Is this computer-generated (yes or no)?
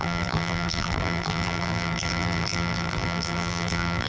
yes